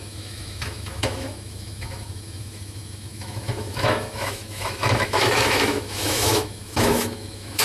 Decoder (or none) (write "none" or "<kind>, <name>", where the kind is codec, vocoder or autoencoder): autoencoder, DAC-VAE